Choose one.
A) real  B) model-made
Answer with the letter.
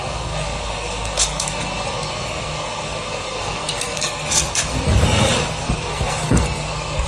B